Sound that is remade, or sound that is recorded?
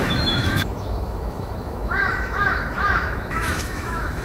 remade